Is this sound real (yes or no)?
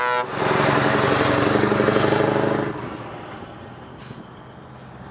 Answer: yes